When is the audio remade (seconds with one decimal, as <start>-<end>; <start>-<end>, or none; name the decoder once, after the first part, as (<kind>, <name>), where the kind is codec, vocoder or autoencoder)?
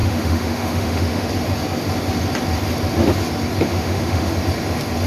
0.0-1.3 (autoencoder, DAC-VAE); 3.7-4.3